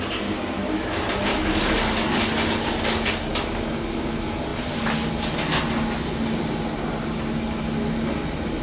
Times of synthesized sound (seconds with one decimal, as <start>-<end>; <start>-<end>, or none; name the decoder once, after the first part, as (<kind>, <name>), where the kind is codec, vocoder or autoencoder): 1.3-2.2 (codec, DAC)